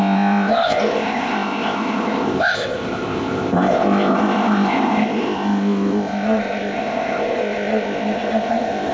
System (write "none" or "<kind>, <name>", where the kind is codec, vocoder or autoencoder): codec, ZipCodec